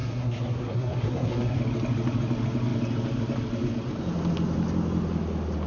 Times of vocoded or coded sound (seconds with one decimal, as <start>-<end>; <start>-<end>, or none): 0.0-1.6

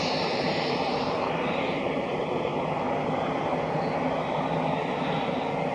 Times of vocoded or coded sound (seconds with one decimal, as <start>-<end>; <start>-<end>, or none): 0.0-2.5; 5.0-5.7

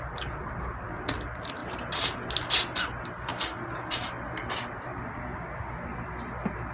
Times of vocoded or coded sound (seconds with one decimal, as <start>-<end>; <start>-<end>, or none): none

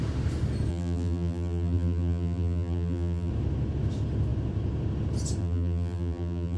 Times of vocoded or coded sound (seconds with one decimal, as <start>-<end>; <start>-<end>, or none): 0.7-3.3; 5.4-6.6

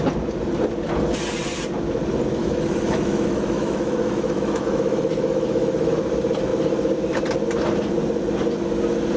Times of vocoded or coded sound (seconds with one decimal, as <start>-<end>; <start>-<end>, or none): 2.4-5.9

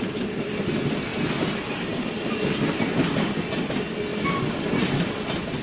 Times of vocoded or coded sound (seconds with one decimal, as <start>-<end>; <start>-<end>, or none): 1.1-1.7

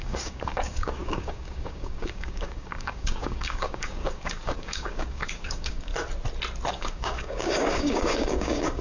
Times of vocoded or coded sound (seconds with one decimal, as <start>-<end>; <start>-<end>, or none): 0.0-5.9; 6.7-8.8

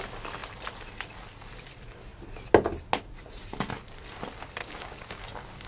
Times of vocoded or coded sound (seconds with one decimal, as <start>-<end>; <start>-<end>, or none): 4.6-5.2